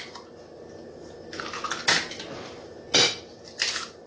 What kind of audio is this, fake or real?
real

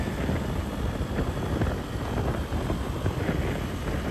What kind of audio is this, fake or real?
real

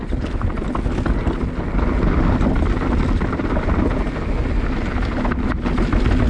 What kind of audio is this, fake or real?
real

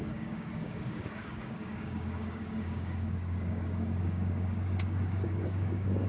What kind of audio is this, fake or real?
fake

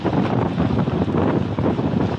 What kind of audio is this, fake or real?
real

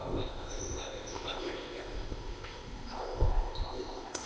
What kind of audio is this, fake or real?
fake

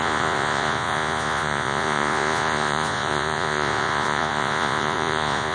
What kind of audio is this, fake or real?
fake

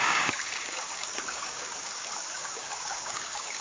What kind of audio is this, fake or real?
fake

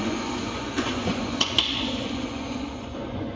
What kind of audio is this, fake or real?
fake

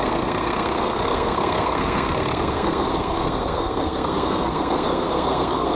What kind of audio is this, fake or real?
fake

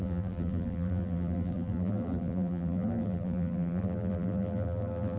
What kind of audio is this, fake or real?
fake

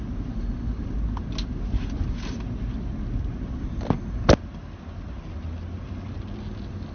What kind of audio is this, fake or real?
real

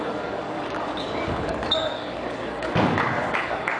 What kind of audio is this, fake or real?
fake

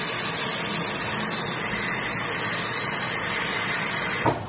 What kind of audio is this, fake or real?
real